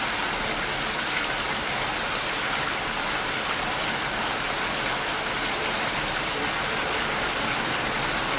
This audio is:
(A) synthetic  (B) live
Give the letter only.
B